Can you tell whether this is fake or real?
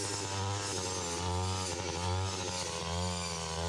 real